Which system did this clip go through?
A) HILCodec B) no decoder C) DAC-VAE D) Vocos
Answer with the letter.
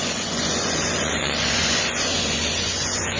D